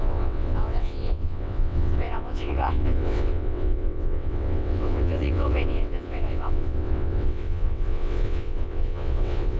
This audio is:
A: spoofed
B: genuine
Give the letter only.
A